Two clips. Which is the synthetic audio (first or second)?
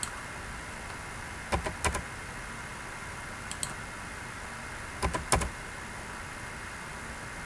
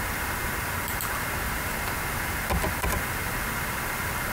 second